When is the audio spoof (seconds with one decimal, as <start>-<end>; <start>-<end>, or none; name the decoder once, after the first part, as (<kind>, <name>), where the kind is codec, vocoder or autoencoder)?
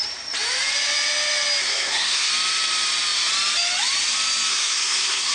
1.6-2.3 (codec, SNAC); 4.5-5.3